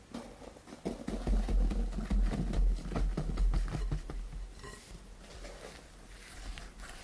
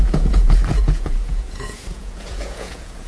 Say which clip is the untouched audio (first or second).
first